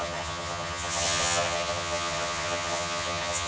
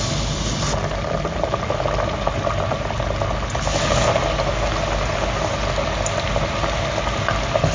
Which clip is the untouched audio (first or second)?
second